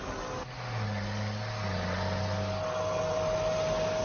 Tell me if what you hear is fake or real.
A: real